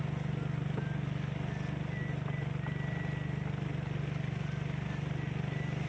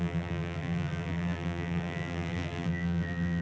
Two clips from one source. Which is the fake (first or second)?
second